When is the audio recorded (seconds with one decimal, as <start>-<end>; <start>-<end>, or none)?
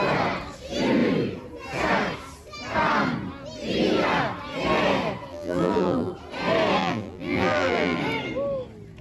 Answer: 0.0-5.3; 6.1-6.8; 8.0-9.0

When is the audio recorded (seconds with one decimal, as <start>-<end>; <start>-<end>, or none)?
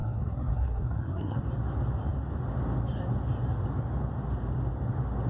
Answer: 1.4-5.3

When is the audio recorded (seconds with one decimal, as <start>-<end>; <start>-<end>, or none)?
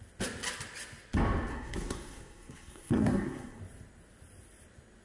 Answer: 0.0-1.5; 3.6-5.0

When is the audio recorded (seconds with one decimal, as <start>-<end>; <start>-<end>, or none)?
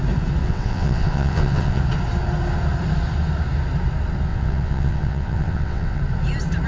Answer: 0.0-0.4; 1.8-4.3; 6.0-6.7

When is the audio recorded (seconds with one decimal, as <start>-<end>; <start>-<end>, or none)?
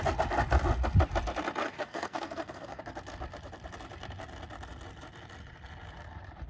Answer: 0.0-1.6; 2.8-6.5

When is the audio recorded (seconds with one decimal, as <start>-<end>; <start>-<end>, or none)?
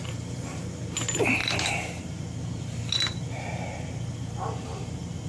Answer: 0.0-5.3